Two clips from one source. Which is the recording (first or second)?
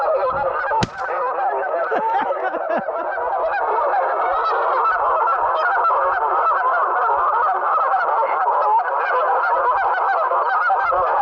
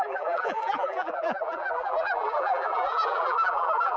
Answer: first